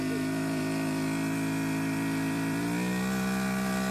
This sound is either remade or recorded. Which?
remade